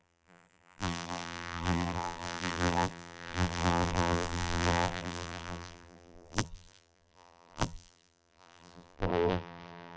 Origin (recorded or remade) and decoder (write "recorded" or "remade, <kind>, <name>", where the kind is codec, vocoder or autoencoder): remade, vocoder, BigVGAN v2